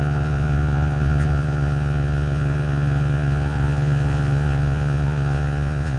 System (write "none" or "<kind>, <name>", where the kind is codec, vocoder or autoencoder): vocoder, Vocos